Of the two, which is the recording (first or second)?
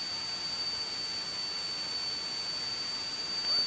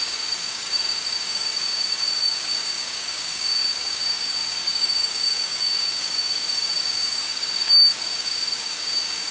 first